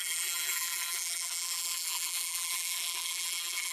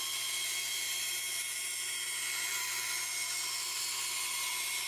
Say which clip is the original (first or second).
second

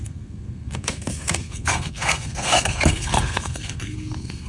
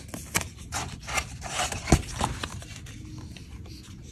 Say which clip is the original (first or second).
second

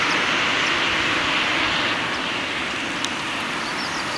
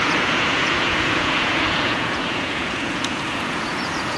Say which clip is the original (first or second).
first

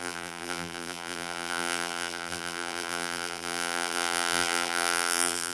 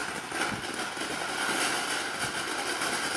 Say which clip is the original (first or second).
second